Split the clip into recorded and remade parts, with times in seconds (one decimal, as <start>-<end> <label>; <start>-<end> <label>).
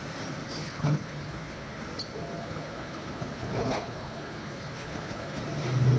0.0-0.6 recorded; 0.6-1.8 remade; 1.8-2.4 recorded; 2.4-5.4 remade; 5.4-6.0 recorded